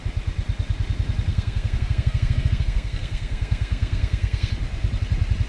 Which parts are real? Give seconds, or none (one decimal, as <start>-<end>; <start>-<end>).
0.0-1.3; 4.5-5.5